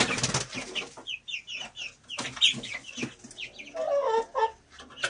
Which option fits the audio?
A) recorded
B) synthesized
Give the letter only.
A